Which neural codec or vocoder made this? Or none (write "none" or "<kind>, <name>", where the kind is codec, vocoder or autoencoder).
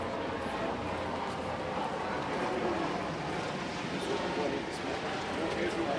none